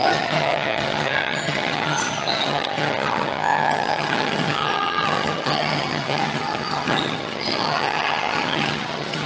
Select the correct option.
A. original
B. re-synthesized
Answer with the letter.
B